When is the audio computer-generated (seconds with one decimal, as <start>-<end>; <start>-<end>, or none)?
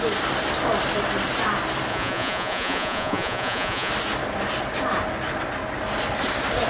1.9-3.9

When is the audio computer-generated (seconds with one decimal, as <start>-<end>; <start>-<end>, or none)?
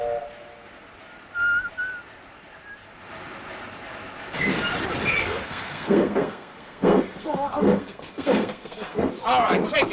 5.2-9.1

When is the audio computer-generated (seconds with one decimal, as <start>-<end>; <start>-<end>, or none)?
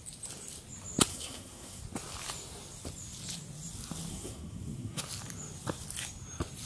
1.1-1.8; 4.1-5.0